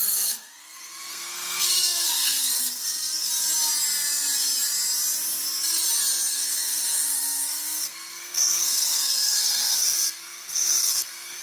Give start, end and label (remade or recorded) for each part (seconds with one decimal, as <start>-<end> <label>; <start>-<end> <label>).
0.0-3.3 remade; 3.3-6.3 recorded; 6.3-11.4 remade